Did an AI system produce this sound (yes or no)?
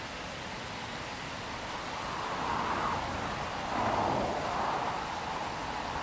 no